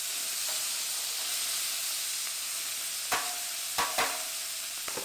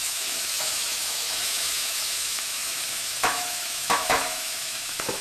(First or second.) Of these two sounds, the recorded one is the first